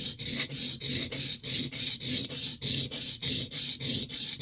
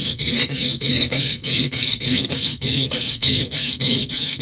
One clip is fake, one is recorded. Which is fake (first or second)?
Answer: second